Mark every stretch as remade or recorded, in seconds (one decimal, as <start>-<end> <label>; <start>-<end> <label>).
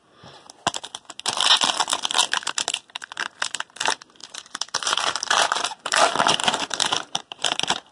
0.0-4.2 recorded; 4.2-6.0 remade; 6.0-6.4 recorded; 6.4-7.9 remade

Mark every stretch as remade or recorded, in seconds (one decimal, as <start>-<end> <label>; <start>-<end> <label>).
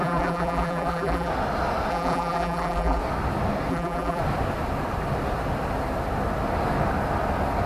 0.0-1.3 remade; 1.3-1.9 recorded; 1.9-3.0 remade; 3.0-3.7 recorded; 3.7-4.2 remade; 4.2-7.7 recorded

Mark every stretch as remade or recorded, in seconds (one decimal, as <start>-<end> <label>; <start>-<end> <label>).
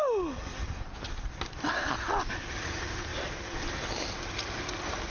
0.0-5.1 recorded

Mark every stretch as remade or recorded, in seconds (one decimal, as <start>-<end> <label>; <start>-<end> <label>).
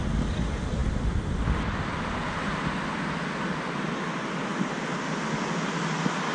0.0-0.8 recorded; 0.8-2.7 remade; 2.7-6.3 recorded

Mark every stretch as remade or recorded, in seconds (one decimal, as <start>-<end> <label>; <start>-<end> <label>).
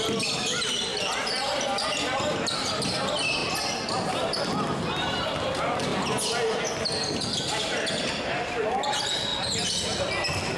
0.0-0.9 recorded; 0.9-1.6 remade; 1.6-10.6 recorded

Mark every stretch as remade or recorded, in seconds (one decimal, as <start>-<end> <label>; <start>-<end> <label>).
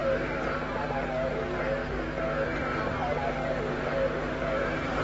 0.0-0.9 remade; 0.9-3.0 recorded; 3.0-5.0 remade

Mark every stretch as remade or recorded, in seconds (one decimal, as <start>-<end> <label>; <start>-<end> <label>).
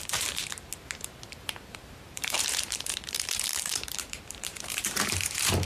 0.0-0.7 remade; 0.7-1.3 recorded; 1.3-5.6 remade